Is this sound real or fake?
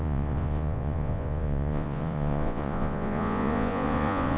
fake